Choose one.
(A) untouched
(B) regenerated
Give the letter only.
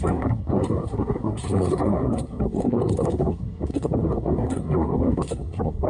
B